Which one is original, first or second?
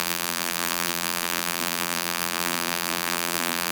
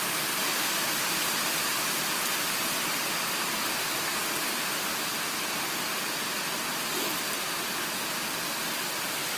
second